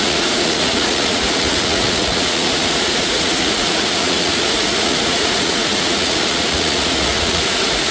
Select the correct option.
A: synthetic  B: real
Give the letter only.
A